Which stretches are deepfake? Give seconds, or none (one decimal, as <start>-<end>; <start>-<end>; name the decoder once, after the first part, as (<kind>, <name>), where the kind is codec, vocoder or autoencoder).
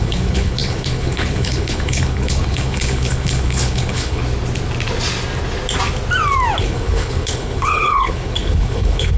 0.0-4.2 (codec, HILCodec); 6.6-9.2